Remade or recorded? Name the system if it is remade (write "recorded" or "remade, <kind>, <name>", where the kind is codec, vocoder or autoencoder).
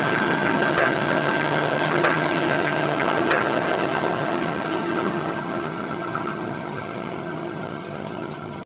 remade, vocoder, HiFi-GAN